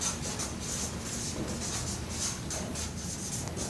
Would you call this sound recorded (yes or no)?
yes